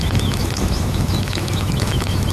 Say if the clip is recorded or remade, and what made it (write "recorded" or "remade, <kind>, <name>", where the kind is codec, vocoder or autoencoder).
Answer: remade, autoencoder, DAC-VAE